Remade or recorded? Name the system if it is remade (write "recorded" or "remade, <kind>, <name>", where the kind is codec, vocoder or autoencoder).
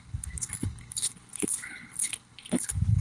remade, codec, HILCodec